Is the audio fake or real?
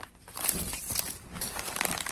real